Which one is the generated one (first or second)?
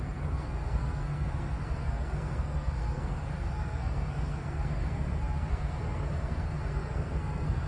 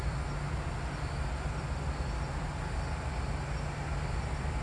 first